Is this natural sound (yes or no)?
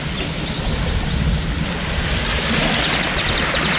yes